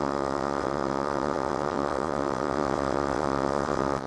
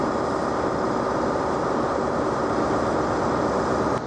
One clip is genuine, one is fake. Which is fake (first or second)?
first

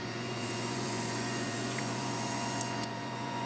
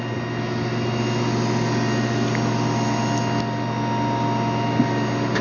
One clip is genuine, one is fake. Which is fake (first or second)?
first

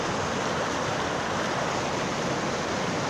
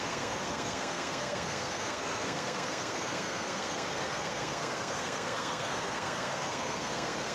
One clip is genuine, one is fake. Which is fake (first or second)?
second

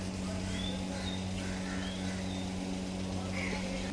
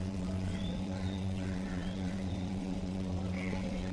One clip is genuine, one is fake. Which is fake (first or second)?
second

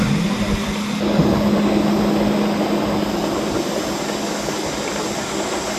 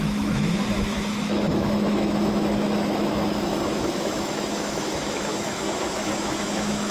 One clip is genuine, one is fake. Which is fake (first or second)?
second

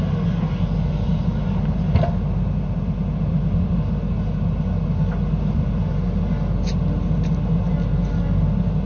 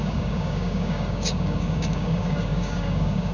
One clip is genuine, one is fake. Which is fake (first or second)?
second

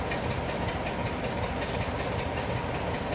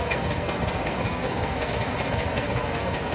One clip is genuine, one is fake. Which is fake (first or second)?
second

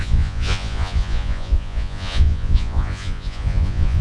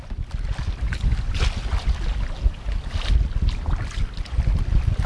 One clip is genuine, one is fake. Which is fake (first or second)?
first